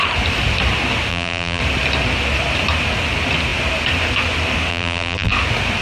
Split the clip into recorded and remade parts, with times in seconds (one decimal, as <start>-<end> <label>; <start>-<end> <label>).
0.0-1.1 recorded; 1.1-1.6 remade; 1.6-4.7 recorded; 4.7-5.3 remade; 5.3-5.8 recorded

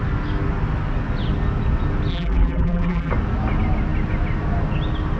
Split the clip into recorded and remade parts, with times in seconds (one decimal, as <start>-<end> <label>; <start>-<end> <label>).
0.0-2.1 recorded; 2.1-3.1 remade; 3.1-5.2 recorded

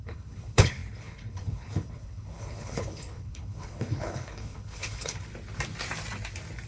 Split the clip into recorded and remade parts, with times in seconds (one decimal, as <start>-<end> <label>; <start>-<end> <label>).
0.0-5.3 remade; 5.3-6.7 recorded

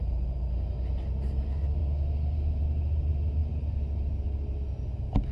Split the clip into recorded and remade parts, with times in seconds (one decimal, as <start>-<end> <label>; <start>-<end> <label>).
0.0-5.3 recorded

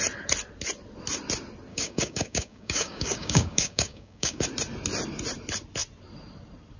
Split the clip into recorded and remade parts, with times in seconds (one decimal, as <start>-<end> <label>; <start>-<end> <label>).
0.0-1.7 recorded; 1.7-4.4 remade; 4.4-6.8 recorded

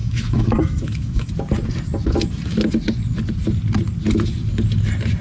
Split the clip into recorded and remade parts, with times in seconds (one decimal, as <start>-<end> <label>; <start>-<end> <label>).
0.0-1.3 remade; 1.3-5.2 recorded

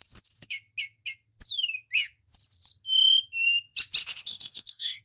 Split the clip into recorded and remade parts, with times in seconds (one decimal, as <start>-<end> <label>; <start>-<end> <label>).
0.0-0.5 remade; 0.5-4.0 recorded; 4.0-5.0 remade

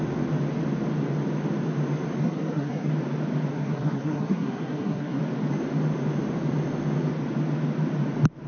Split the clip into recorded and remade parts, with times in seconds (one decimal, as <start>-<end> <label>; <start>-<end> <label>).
0.0-2.2 recorded; 2.2-2.9 remade; 2.9-3.5 recorded; 3.5-5.2 remade; 5.2-8.5 recorded